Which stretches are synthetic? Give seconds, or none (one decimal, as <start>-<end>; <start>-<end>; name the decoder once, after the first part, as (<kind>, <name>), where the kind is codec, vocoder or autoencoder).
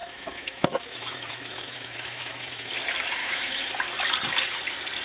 0.0-2.7 (autoencoder, DAC-VAE); 3.2-3.7